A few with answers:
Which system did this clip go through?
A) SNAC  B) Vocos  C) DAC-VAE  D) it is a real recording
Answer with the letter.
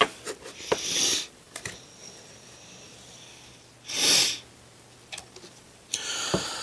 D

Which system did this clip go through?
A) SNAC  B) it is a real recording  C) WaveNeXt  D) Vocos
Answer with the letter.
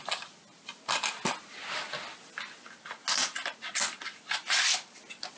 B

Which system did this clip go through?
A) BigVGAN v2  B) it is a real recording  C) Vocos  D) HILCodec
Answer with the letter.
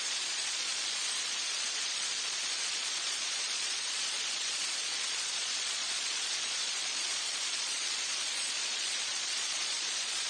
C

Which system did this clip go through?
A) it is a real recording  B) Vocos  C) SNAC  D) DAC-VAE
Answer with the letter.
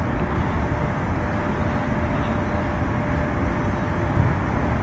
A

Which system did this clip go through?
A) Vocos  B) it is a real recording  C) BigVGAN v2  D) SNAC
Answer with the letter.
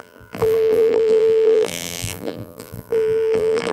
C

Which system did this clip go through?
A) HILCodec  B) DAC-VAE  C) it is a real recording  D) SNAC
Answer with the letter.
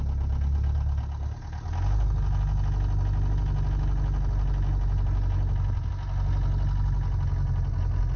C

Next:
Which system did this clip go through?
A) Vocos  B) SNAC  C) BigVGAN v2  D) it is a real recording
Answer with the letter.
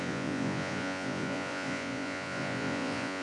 A